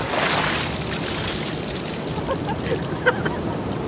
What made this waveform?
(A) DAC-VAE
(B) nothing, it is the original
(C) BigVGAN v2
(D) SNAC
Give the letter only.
B